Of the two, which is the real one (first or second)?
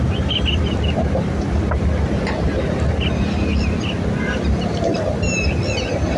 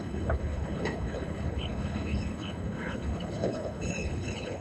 first